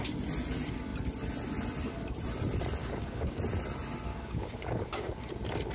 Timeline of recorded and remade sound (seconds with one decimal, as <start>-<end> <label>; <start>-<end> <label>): 0.0-2.8 recorded; 2.8-3.4 remade; 3.4-4.1 recorded; 4.1-5.2 remade; 5.2-5.7 recorded